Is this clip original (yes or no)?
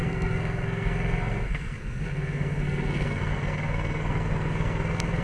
no